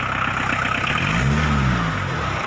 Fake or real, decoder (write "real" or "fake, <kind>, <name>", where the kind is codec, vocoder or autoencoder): real